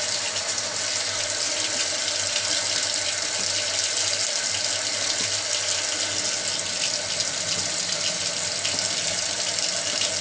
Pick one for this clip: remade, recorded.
recorded